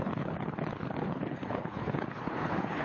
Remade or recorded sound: remade